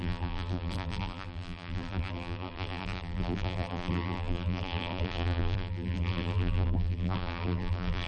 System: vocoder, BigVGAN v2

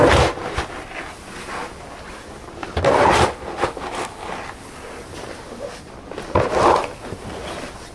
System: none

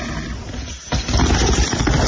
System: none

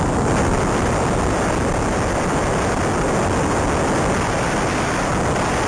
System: none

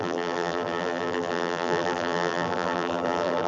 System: vocoder, BigVGAN v2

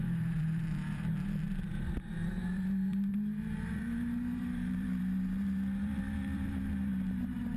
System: vocoder, BigVGAN v2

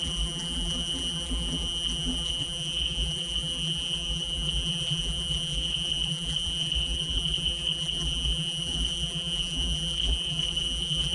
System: vocoder, BigVGAN v2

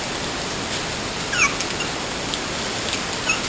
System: none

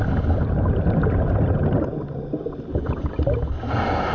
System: none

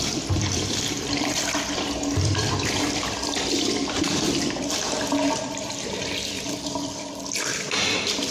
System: vocoder, BigVGAN v2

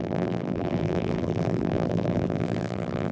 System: vocoder, BigVGAN v2